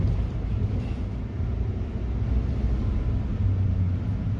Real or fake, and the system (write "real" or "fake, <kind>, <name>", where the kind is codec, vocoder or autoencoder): real